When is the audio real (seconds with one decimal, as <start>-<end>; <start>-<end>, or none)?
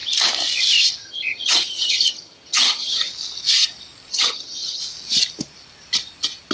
0.0-1.0; 3.1-4.1; 4.8-6.5